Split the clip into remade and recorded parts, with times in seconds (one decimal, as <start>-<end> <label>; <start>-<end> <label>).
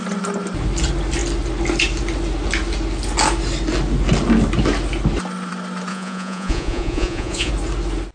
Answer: 0.0-5.9 recorded; 5.9-7.5 remade; 7.5-8.1 recorded